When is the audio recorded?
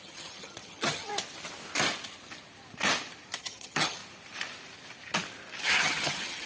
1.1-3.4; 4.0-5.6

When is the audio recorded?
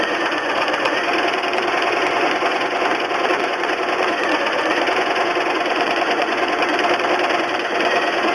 6.7-7.4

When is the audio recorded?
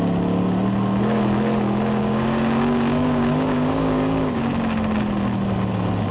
0.0-2.0; 4.5-6.1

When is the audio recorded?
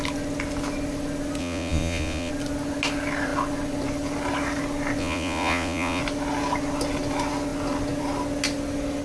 0.0-1.4; 2.3-5.0; 6.0-9.0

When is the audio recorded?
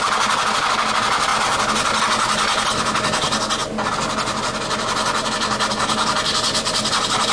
0.0-7.3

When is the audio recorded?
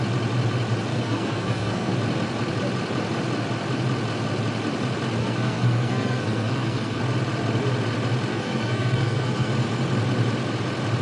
0.0-0.9; 1.9-5.2; 7.0-8.3; 9.5-11.0